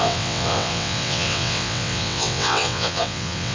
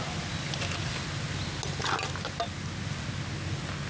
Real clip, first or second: second